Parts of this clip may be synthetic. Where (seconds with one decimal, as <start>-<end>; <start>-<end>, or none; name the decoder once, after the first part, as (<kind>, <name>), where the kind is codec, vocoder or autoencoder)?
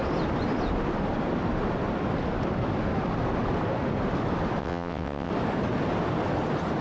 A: 4.6-5.3 (vocoder, WaveNeXt)